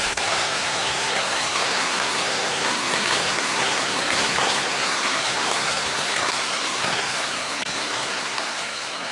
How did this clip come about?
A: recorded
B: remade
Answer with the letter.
B